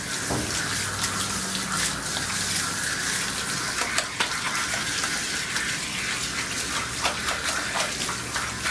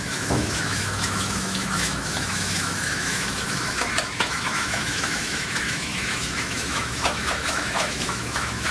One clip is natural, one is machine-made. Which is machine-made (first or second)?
second